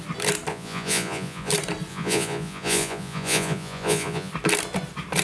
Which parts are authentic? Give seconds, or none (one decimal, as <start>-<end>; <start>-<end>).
0.0-0.5; 1.5-1.9; 4.3-5.2